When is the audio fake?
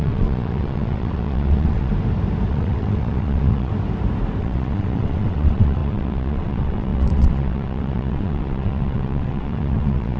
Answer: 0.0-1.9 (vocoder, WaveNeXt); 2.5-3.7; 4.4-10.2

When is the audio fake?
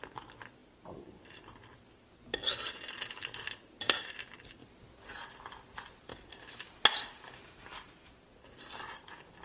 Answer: 0.0-4.6 (vocoder, BigVGAN v2); 5.1-6.1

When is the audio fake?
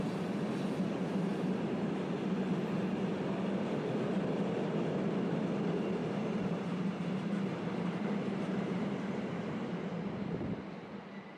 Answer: 6.0-9.7 (vocoder, BigVGAN v2)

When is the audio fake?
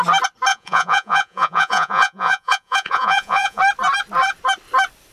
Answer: 0.5-3.6 (vocoder, Vocos)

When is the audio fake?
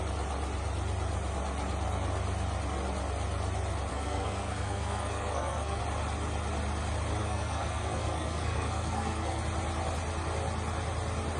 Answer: 3.9-5.8 (codec, SNAC); 7.2-9.4